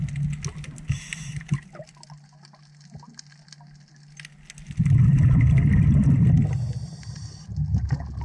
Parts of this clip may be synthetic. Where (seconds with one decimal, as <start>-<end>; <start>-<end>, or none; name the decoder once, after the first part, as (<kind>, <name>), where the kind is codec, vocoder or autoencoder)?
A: none